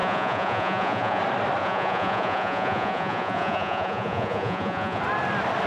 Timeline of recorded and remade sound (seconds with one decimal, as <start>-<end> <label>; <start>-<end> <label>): 0.0-1.2 remade; 1.2-1.6 recorded; 1.6-5.0 remade; 5.0-5.7 recorded

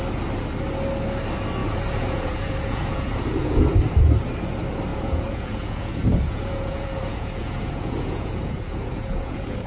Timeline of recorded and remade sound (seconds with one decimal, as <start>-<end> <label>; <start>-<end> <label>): 0.0-1.6 recorded; 1.6-3.7 remade; 3.7-4.9 recorded; 4.9-9.7 remade

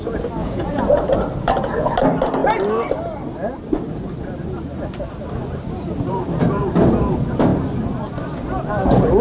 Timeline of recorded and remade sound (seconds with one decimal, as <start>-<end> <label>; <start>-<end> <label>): 0.0-0.4 recorded; 0.4-0.9 remade; 0.9-9.2 recorded

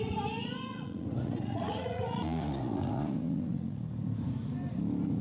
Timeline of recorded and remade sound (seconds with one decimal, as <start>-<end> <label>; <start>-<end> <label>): 0.0-0.7 recorded; 0.7-3.8 remade; 3.8-5.2 recorded

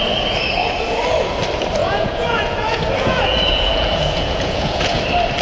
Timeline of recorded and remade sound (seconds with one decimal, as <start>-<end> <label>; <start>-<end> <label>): 0.0-1.8 recorded; 1.8-5.0 remade; 5.0-5.4 recorded